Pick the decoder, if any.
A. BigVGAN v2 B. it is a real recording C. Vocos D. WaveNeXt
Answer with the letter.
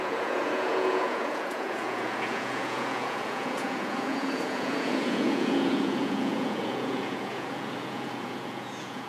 C